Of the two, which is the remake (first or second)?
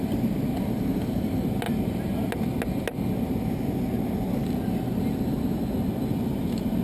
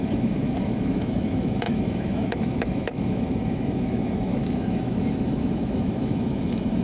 second